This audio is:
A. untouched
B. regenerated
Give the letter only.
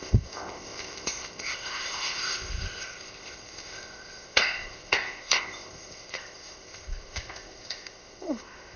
B